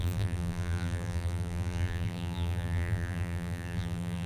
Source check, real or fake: fake